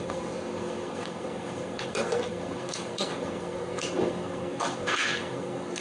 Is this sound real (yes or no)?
no